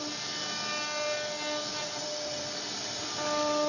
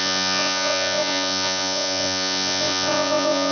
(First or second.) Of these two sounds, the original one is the first